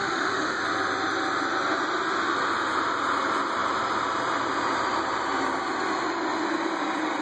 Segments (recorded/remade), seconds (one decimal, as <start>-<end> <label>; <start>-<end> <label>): 0.0-0.6 remade; 0.6-7.2 recorded